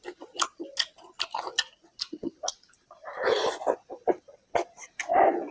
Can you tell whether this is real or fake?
real